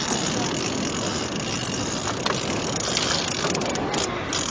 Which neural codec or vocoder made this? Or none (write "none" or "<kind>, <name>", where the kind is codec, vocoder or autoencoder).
none